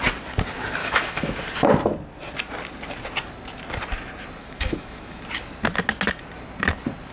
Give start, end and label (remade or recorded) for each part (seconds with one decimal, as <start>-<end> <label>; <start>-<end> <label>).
0.0-0.8 recorded; 0.8-1.4 remade; 1.4-4.4 recorded; 4.4-5.2 remade; 5.2-7.1 recorded